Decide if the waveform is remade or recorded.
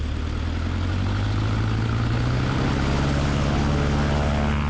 recorded